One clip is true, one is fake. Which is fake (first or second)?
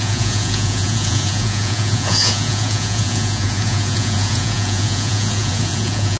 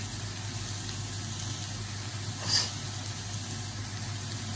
first